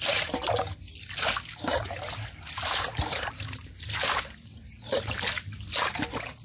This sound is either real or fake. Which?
real